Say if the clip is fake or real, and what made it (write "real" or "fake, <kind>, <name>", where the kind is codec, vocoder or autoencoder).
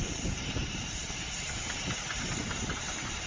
real